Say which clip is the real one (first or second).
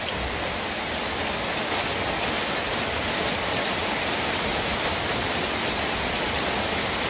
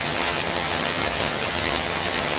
first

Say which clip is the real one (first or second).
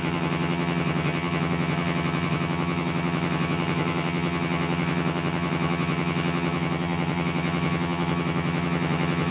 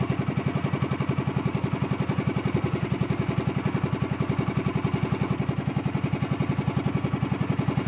second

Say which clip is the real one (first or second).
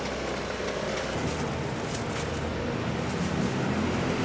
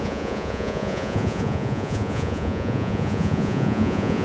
first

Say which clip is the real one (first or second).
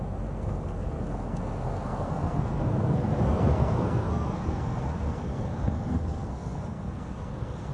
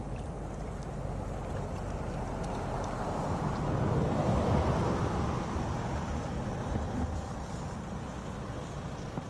second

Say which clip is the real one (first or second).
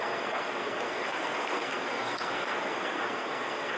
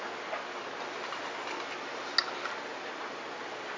second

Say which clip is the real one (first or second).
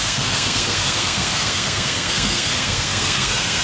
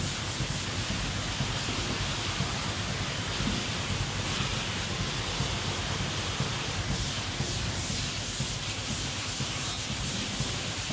second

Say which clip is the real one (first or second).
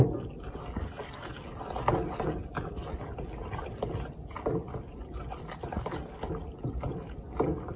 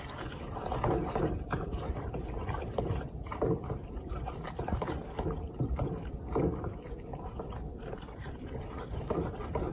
first